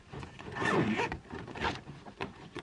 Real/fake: fake